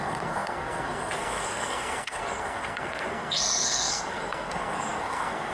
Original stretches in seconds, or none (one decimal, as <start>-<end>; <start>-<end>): none